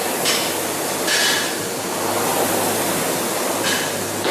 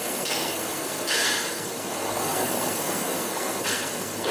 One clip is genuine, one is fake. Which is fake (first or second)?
second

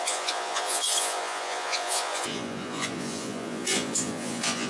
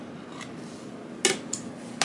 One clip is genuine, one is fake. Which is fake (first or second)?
first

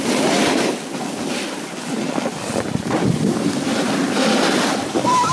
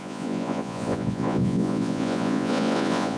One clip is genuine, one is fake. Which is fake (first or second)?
second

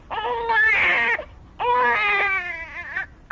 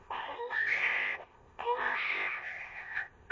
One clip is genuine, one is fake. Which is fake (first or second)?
second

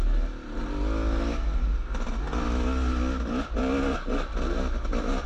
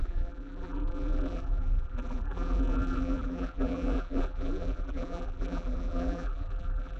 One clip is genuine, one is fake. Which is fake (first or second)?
second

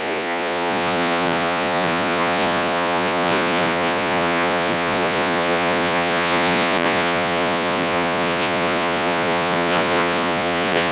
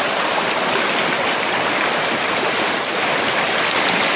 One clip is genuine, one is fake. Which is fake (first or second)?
first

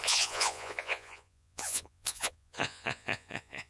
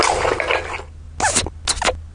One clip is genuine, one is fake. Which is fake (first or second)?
first